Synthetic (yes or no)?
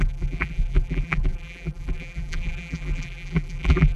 yes